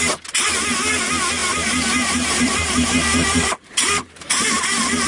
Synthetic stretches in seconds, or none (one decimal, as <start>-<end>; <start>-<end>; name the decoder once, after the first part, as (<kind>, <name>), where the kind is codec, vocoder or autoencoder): 1.4-4.5 (vocoder, BigVGAN v2)